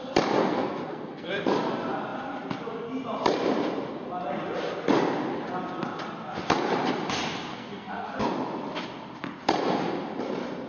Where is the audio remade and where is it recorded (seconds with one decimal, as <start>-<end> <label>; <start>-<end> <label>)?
0.0-0.4 recorded; 0.4-1.3 remade; 1.3-7.5 recorded; 7.5-8.1 remade; 8.1-10.7 recorded